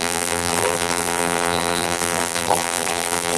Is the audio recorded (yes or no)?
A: no